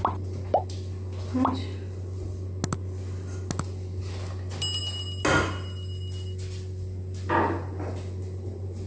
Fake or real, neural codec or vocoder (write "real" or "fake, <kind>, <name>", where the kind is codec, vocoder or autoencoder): real